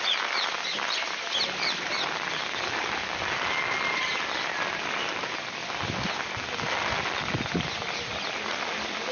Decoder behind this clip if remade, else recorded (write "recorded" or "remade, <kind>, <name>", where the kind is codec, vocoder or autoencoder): recorded